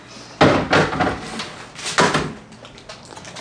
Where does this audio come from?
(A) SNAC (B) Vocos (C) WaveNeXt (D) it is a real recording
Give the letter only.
D